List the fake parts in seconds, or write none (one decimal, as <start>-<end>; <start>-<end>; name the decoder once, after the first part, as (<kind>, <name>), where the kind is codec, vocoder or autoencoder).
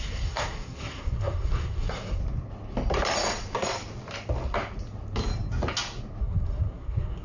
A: 0.0-2.2 (codec, SNAC); 6.2-7.2